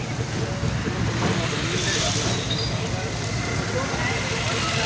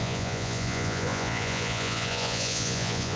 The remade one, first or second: second